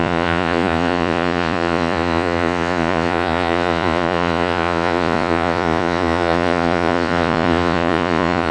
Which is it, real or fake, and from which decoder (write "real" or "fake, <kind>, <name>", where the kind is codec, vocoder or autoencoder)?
fake, vocoder, Vocos